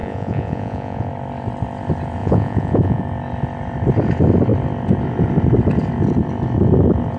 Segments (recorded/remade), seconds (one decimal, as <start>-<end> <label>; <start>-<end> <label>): 0.0-1.1 remade; 1.1-2.2 recorded; 2.2-3.0 remade; 3.0-7.2 recorded